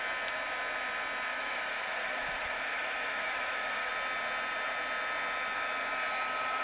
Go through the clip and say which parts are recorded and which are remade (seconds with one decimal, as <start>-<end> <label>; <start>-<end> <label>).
0.0-1.3 recorded; 1.3-3.9 remade; 3.9-6.6 recorded